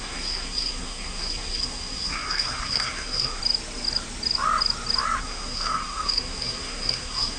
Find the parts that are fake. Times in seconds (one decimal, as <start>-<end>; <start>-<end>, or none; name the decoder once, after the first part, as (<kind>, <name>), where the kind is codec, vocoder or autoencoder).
0.0-3.4 (codec, SNAC); 5.2-7.4